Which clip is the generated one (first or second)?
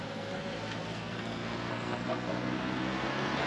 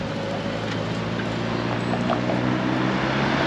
first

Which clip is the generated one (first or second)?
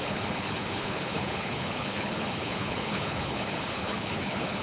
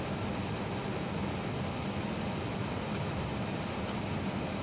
first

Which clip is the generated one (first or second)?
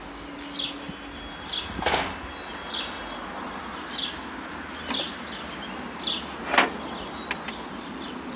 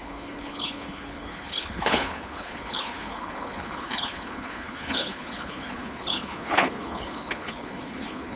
second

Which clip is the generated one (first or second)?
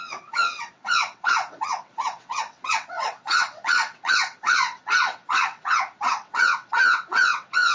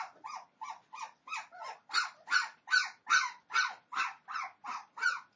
first